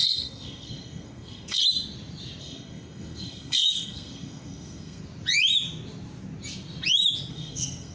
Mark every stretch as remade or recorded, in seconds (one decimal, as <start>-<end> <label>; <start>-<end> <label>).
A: 0.0-1.6 remade; 1.6-2.4 recorded; 2.4-5.0 remade; 5.0-7.3 recorded; 7.3-7.9 remade